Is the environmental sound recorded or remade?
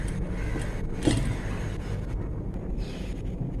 recorded